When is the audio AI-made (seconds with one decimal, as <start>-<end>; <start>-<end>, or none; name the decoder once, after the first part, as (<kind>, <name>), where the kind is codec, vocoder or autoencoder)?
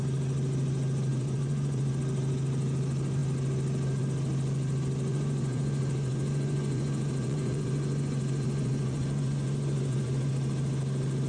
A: 1.1-1.9 (vocoder, Vocos); 5.1-10.3